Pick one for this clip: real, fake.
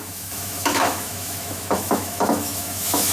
fake